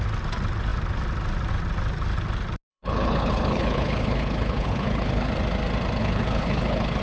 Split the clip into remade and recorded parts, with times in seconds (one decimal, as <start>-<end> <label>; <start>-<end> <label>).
0.0-2.7 recorded; 2.7-5.3 remade; 5.3-6.0 recorded; 6.0-7.0 remade